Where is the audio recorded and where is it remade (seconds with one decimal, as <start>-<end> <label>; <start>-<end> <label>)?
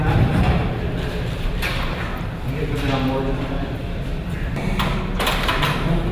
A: 0.0-2.1 remade; 2.1-5.0 recorded; 5.0-6.1 remade